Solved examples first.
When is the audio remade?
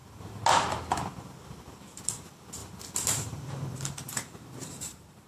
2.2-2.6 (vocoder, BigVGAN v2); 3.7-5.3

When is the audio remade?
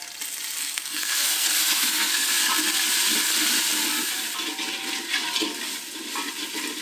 0.6-2.5 (codec, SNAC)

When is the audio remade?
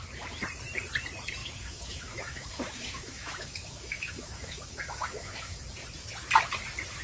1.4-5.6 (autoencoder, DAC-VAE)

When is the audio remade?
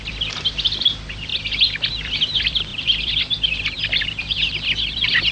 0.0-1.3 (vocoder, BigVGAN v2); 1.9-5.3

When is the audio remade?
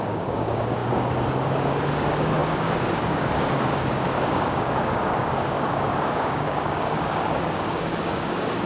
0.0-8.7 (codec, DAC)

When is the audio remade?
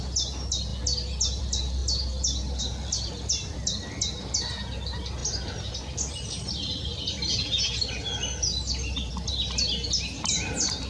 none